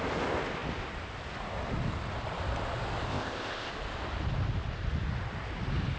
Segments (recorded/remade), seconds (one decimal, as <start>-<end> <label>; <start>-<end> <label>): 0.0-3.1 recorded; 3.1-3.7 remade; 3.7-6.0 recorded